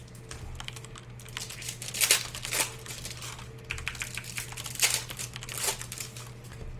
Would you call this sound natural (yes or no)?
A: yes